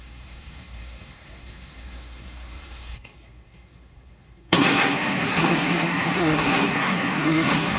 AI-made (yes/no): yes